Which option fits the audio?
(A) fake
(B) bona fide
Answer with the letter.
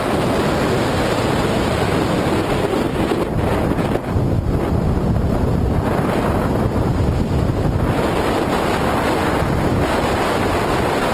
B